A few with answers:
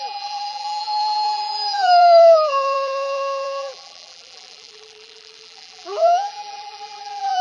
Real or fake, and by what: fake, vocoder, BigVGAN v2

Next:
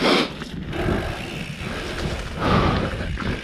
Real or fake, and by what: real